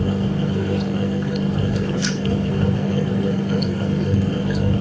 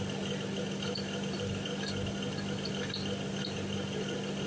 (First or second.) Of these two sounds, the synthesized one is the first